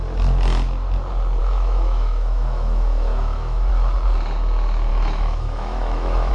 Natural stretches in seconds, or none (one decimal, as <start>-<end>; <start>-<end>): 0.0-1.4; 3.7-4.9